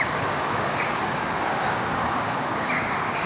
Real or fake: fake